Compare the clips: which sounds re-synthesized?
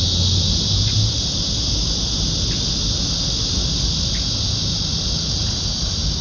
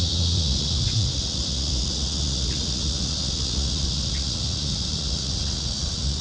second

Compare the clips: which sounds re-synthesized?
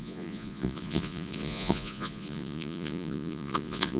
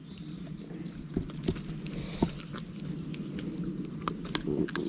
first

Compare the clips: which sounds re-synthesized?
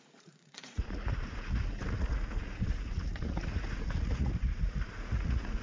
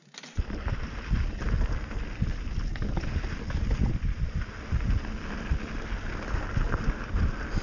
first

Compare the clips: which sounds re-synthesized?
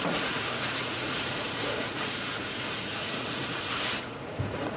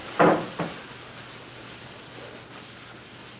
first